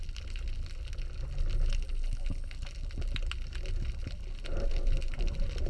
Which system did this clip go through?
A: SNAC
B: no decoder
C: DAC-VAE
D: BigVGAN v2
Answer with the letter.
B